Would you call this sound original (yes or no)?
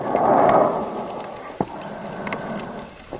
yes